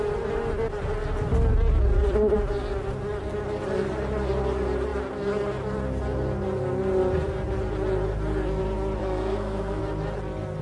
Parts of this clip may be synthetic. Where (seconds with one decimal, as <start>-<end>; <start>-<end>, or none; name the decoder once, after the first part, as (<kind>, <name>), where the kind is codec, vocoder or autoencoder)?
9.0-9.8 (codec, SNAC)

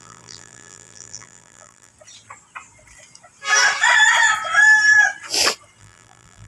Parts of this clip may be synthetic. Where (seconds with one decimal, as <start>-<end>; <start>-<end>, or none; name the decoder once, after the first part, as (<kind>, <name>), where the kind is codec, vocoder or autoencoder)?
0.0-1.9 (vocoder, BigVGAN v2); 5.8-6.5